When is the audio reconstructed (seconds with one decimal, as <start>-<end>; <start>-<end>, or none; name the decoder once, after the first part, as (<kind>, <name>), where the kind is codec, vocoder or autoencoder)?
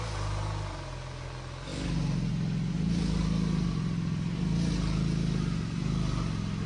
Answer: none